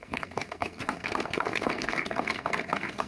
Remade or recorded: remade